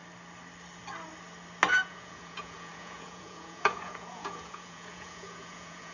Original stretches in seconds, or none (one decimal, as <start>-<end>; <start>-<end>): 0.0-1.7